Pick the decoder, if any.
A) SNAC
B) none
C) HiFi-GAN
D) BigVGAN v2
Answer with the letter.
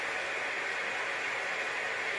B